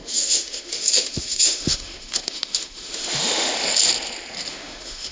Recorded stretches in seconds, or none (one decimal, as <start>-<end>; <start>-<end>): 3.5-4.5

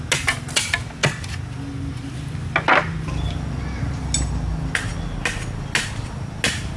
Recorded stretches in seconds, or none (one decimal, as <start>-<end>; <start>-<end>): 0.0-6.8

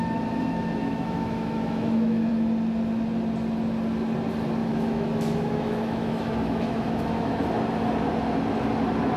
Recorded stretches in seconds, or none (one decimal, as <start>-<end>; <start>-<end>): 0.0-0.8; 2.3-4.6; 7.4-9.2